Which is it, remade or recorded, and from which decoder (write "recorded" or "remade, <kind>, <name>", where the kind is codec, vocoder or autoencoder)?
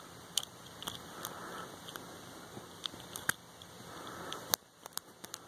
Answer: recorded